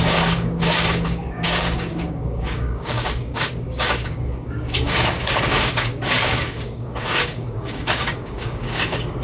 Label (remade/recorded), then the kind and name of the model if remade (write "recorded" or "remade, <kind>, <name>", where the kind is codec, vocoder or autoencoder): remade, codec, DAC